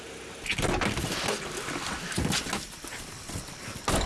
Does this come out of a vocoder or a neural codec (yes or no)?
no